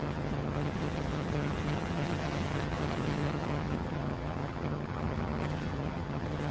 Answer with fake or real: fake